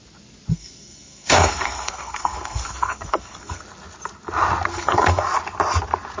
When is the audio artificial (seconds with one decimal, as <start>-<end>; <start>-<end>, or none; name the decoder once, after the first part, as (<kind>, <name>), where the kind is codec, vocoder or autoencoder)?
0.5-3.6 (codec, SNAC); 4.7-5.2